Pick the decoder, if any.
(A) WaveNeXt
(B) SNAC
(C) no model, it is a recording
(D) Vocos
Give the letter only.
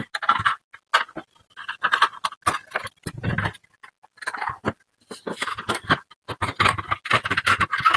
C